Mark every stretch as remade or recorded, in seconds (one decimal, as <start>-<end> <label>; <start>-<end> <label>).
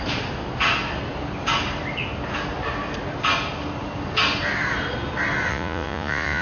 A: 0.0-5.5 recorded; 5.5-6.4 remade